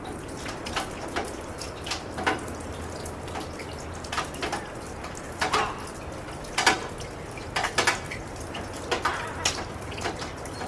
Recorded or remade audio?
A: recorded